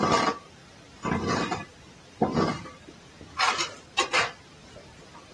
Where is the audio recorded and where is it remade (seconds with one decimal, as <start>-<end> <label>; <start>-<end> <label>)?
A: 0.0-5.3 remade